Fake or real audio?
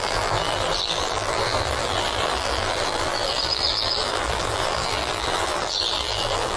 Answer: fake